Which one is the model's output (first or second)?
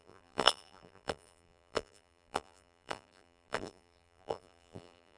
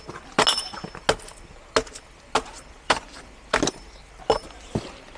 first